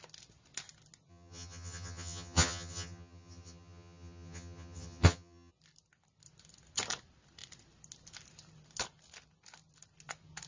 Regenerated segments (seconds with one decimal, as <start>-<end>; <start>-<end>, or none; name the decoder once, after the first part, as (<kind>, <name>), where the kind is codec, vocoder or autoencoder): 1.1-5.5 (vocoder, HiFi-GAN)